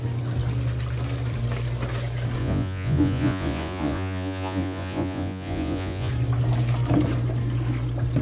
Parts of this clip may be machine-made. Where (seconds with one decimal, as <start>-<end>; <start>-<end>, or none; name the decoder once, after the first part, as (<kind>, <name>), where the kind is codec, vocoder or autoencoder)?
2.4-6.1 (vocoder, Vocos)